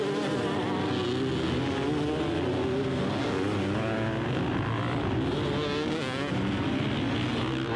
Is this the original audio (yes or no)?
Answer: yes